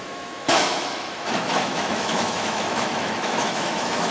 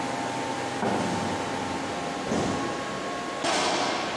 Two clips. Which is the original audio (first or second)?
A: second